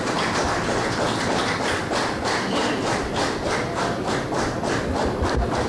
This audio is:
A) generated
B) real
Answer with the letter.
B